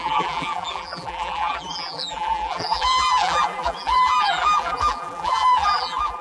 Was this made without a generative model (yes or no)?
no